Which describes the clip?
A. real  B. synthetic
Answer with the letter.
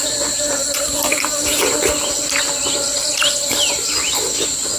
A